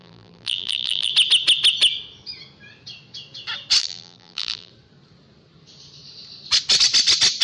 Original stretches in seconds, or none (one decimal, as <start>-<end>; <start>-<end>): 1.1-3.8; 4.7-7.4

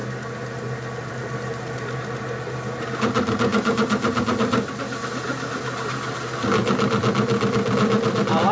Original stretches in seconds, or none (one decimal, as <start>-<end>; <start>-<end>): 0.0-8.5